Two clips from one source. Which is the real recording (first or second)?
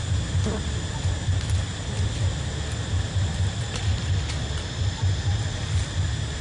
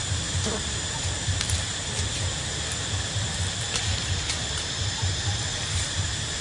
first